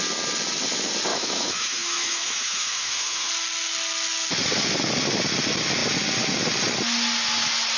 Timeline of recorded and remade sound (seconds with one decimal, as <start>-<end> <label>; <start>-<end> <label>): 0.0-1.1 recorded; 1.1-3.3 remade; 3.3-7.8 recorded